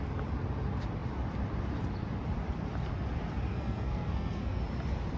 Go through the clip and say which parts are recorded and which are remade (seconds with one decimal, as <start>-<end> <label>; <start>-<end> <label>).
0.0-3.5 recorded; 3.5-4.6 remade; 4.6-5.2 recorded